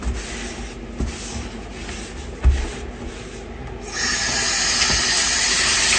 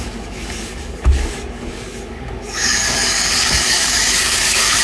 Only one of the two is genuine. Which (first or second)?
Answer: first